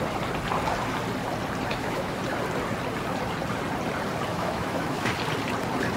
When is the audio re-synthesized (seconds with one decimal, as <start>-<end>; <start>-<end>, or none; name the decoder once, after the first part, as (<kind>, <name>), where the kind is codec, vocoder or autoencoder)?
1.7-2.2 (autoencoder, DAC-VAE); 4.3-5.1